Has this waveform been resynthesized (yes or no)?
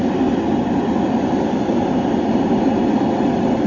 no